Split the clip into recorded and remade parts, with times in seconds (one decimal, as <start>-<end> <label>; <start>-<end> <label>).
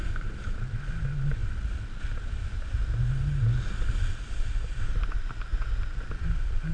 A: 0.0-6.7 recorded